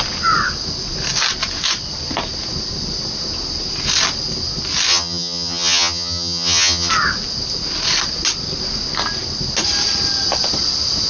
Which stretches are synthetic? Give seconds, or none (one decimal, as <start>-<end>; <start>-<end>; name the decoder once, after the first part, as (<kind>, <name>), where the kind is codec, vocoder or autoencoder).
4.9-6.9 (vocoder, HiFi-GAN)